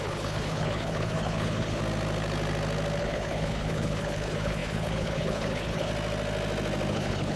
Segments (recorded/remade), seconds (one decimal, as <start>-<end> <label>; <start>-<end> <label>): 0.0-1.8 remade; 1.8-3.0 recorded; 3.0-5.9 remade; 5.9-6.9 recorded; 6.9-7.4 remade

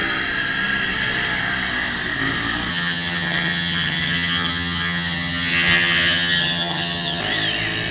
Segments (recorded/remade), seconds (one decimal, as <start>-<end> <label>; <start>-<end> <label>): 0.0-2.7 recorded; 2.7-7.2 remade; 7.2-7.9 recorded

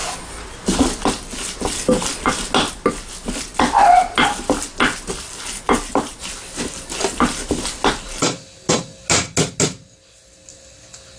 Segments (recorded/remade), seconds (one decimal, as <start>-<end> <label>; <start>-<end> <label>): 0.0-11.2 recorded

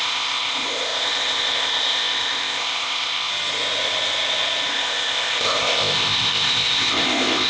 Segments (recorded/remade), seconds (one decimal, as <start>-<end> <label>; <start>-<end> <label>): 0.0-3.3 remade; 3.3-4.7 recorded; 4.7-7.5 remade

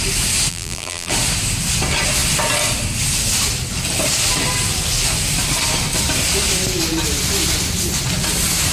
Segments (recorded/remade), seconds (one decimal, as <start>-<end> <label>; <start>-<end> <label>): 0.0-0.5 recorded; 0.5-1.1 remade; 1.1-8.7 recorded

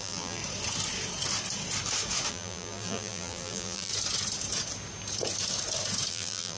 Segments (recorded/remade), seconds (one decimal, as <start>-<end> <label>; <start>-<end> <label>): 0.0-0.4 remade; 0.4-2.3 recorded; 2.3-3.9 remade; 3.9-6.1 recorded; 6.1-6.6 remade

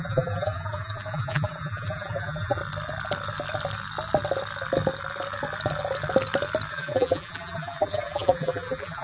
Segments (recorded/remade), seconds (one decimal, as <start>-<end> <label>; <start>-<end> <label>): 0.0-2.6 remade; 2.6-6.7 recorded; 6.7-9.0 remade

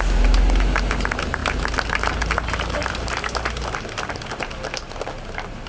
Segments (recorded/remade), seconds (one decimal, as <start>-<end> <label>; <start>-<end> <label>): 0.0-5.7 recorded